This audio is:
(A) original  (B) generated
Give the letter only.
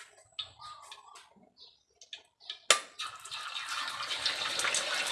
A